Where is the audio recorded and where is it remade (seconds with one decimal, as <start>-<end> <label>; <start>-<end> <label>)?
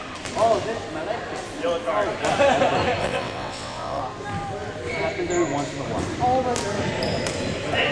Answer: 0.0-3.0 recorded; 3.0-4.0 remade; 4.0-7.9 recorded